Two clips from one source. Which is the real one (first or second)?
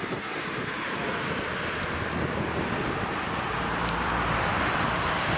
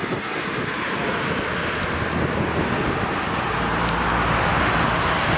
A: second